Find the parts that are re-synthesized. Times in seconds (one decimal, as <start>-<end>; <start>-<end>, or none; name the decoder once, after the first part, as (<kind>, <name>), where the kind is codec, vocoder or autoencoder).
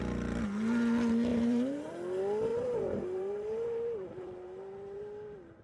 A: 1.3-1.9 (vocoder, BigVGAN v2); 2.5-5.0